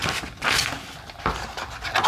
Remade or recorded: recorded